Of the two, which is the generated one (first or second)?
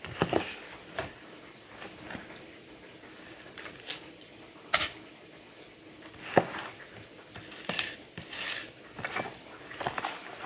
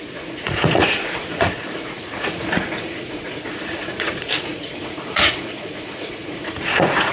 second